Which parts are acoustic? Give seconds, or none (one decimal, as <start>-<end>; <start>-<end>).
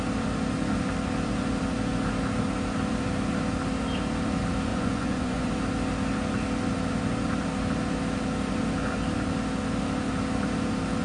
0.0-4.7; 5.5-11.0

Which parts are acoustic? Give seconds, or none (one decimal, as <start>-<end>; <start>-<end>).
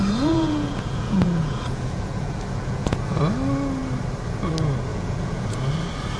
3.2-4.9; 5.6-6.2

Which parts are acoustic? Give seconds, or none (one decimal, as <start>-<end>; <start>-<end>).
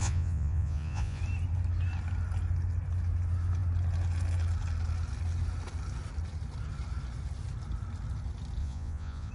1.2-8.6